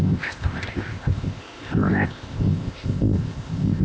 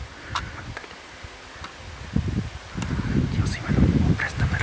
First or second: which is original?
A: second